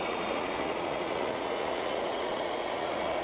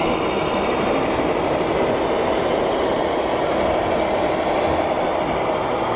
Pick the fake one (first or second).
first